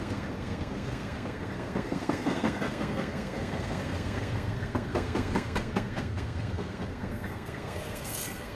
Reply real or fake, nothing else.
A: fake